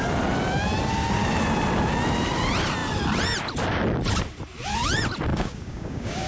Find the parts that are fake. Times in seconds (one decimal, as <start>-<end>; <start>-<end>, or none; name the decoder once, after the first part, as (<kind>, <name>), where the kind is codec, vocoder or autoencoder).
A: 5.3-6.3 (codec, DAC)